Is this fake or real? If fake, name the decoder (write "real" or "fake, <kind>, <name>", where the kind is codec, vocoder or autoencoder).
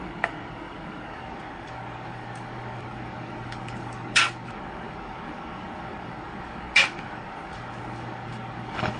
fake, codec, DAC